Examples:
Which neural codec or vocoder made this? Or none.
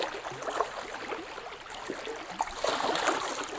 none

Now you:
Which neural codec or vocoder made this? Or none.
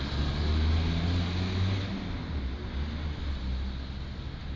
none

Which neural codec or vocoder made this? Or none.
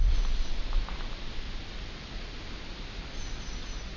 none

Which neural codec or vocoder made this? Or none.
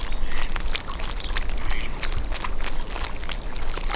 none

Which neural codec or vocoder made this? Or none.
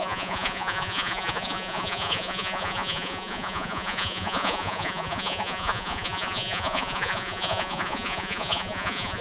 vocoder, Vocos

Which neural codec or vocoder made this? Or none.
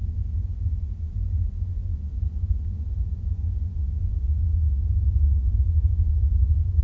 vocoder, Vocos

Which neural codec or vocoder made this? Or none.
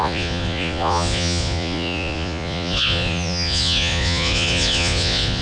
vocoder, Vocos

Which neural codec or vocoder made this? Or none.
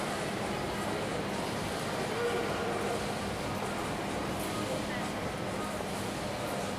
none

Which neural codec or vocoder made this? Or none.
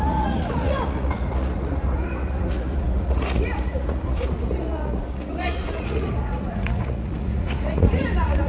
vocoder, Vocos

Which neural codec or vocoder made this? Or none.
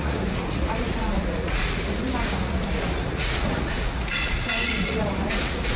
vocoder, Vocos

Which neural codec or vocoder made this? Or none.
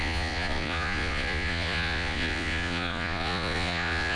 vocoder, Vocos